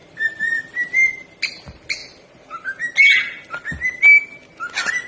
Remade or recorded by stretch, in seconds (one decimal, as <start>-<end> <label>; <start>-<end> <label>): 0.0-0.6 remade; 0.6-5.1 recorded